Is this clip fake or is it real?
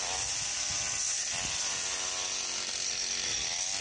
real